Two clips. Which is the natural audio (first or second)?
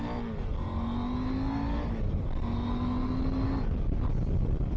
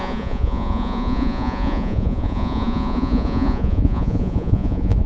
first